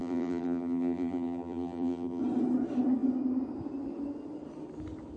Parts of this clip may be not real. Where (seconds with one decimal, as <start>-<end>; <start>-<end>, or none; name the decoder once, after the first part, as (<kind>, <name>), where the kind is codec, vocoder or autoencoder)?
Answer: 0.0-2.2 (vocoder, BigVGAN v2)